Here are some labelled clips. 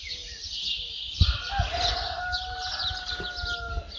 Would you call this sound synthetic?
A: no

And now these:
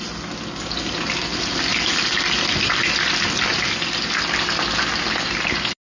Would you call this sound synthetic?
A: no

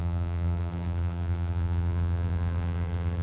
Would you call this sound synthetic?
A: yes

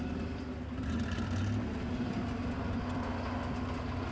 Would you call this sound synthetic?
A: no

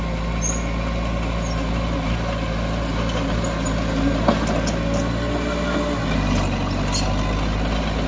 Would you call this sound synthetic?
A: no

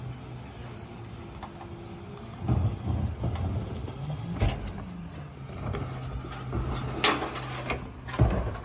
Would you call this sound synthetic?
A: no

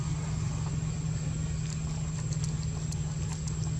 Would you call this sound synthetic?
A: no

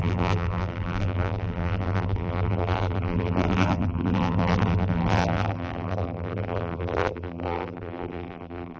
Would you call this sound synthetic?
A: yes